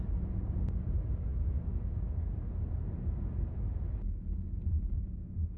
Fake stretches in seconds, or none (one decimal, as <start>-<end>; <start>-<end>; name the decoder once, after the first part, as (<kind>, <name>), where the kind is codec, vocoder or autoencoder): none